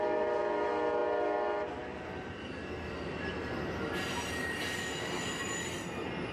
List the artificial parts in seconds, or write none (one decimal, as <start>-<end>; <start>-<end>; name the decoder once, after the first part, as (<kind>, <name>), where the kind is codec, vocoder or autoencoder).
none